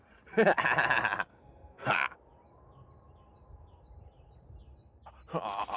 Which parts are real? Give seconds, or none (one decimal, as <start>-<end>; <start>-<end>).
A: 0.0-1.3; 1.9-5.8